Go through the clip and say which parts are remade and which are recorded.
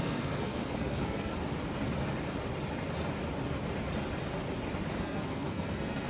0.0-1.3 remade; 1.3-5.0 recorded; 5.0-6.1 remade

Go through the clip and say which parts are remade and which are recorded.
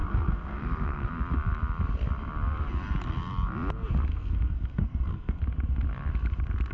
0.0-1.1 remade; 1.1-4.1 recorded; 4.1-5.4 remade; 5.4-6.7 recorded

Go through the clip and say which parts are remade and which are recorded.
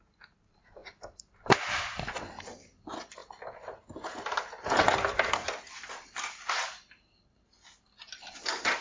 0.0-8.8 recorded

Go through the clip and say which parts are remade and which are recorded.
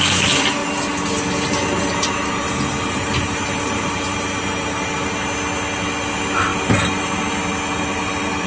0.0-8.5 recorded